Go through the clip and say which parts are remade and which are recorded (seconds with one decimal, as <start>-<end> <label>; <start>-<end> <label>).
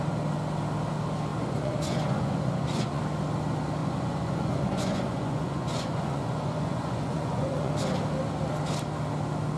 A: 0.0-1.3 recorded; 1.3-3.0 remade; 3.0-3.8 recorded; 3.8-7.7 remade; 7.7-9.6 recorded